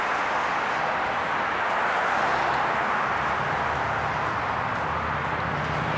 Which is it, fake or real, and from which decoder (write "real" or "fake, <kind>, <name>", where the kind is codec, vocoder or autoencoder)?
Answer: real